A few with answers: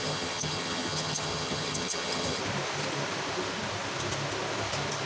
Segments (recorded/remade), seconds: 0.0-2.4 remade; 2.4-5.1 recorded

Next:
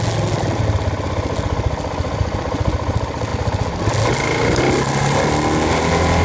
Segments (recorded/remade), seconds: 0.0-6.2 recorded

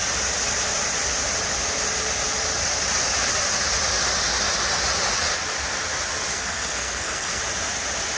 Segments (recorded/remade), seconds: 0.0-6.3 recorded; 6.3-7.4 remade; 7.4-8.2 recorded

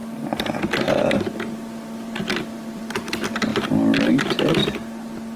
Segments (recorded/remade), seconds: 0.0-1.3 recorded; 1.3-3.5 remade; 3.5-4.1 recorded; 4.1-4.6 remade; 4.6-5.4 recorded

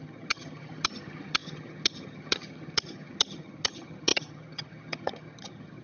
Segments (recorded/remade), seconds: 0.0-5.8 remade

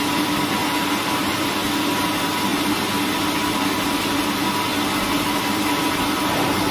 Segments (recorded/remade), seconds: 0.0-6.7 recorded

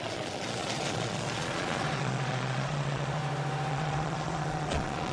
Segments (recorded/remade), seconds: 0.0-3.2 remade; 3.2-3.7 recorded; 3.7-5.1 remade

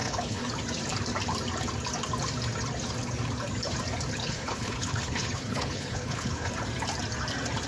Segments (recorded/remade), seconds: 0.0-0.5 remade; 0.5-4.2 recorded; 4.2-6.5 remade; 6.5-7.7 recorded